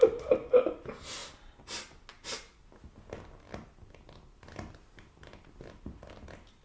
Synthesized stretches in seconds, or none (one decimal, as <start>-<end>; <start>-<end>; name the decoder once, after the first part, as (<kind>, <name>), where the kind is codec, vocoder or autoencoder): none